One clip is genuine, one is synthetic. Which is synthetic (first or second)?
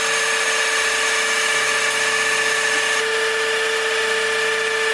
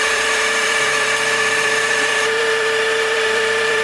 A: second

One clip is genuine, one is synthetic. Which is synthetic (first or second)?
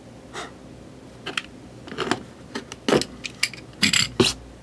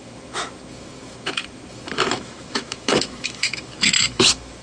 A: second